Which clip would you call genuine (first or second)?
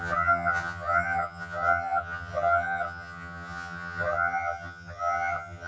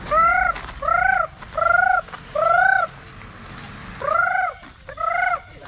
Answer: second